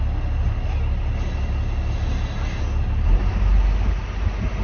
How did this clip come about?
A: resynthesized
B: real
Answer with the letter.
B